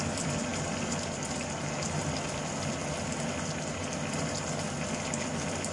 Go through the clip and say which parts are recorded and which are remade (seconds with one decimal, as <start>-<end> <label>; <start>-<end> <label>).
0.0-5.7 recorded